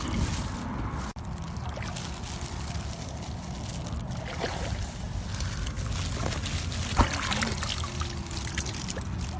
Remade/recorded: recorded